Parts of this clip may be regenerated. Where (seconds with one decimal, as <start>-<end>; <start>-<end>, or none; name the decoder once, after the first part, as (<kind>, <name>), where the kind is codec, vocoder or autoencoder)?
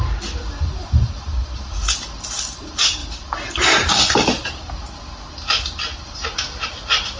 0.8-2.2 (vocoder, BigVGAN v2); 3.0-4.7